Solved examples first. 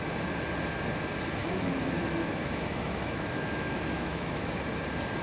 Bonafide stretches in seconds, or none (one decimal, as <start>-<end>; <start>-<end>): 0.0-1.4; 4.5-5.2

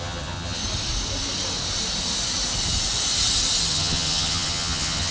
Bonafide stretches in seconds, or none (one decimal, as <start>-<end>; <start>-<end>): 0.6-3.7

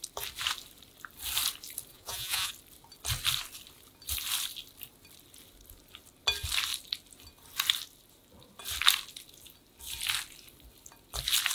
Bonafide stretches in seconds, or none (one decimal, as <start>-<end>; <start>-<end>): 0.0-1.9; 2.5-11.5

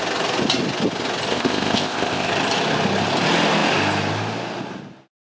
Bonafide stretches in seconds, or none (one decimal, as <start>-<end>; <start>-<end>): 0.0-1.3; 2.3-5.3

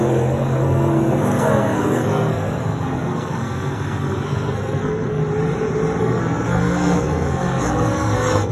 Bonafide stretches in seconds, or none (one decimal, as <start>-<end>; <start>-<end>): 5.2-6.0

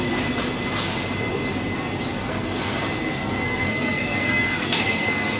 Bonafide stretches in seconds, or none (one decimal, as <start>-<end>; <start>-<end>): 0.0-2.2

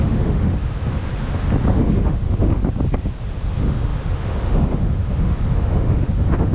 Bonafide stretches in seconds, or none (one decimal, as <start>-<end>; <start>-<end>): 1.1-1.7; 2.6-3.2

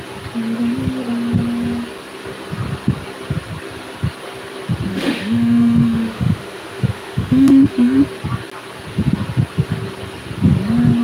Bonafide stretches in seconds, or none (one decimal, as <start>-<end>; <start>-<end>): 0.0-4.9; 8.0-11.0